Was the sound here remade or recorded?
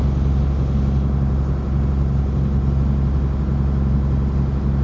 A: recorded